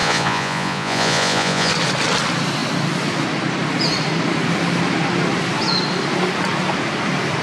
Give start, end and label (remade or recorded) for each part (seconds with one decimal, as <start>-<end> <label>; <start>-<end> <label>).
0.0-1.7 remade; 1.7-7.4 recorded